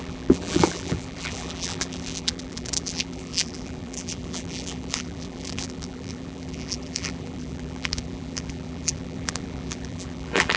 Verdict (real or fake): fake